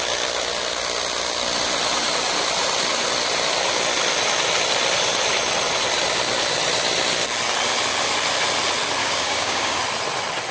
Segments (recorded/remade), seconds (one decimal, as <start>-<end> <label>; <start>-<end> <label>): 0.0-9.0 recorded; 9.0-9.8 remade; 9.8-10.5 recorded